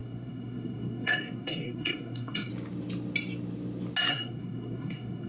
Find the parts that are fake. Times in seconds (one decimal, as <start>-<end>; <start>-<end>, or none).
0.0-2.5; 4.1-5.3